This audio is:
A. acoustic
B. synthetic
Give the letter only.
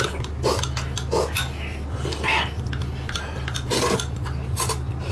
A